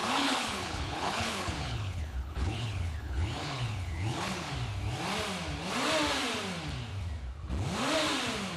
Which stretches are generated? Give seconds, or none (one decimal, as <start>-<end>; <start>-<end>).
0.0-4.5